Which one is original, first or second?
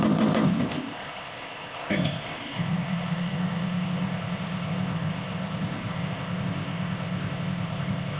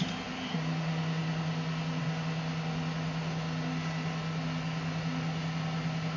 second